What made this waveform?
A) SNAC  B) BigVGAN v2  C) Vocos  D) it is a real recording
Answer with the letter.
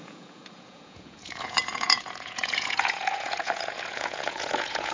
C